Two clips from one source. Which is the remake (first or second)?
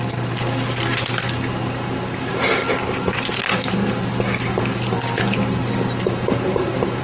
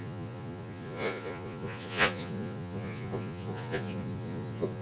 second